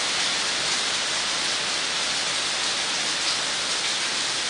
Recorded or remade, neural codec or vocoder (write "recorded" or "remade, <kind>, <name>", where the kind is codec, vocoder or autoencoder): recorded